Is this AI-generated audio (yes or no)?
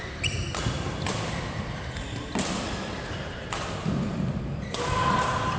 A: no